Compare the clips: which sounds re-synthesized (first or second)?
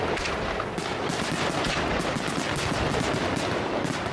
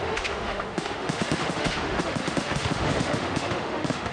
second